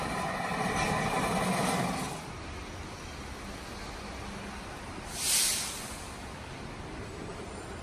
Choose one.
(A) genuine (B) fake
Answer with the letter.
A